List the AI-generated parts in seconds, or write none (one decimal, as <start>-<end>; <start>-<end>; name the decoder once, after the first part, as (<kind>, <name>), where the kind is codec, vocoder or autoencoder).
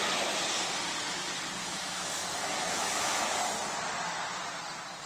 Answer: 1.6-3.2 (autoencoder, DAC-VAE)